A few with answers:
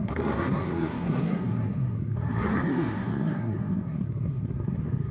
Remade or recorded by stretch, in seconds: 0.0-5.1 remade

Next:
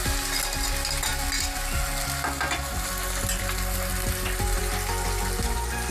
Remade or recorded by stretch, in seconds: 0.0-5.9 recorded

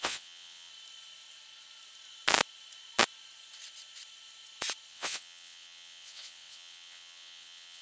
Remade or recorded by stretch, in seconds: 0.0-0.7 remade; 0.7-4.9 recorded; 4.9-7.8 remade

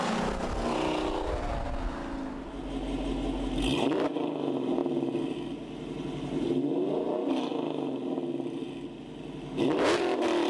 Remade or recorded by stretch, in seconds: 0.0-10.5 recorded